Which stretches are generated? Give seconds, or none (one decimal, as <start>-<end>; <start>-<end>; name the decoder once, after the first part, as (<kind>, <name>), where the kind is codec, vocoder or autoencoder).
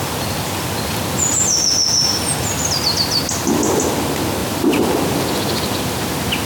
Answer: none